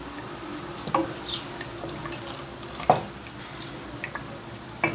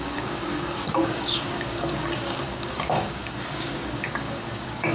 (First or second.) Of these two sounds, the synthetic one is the second